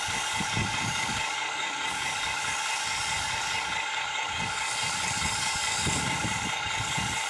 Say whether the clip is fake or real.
fake